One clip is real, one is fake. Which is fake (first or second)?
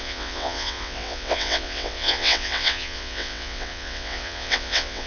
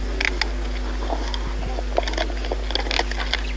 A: first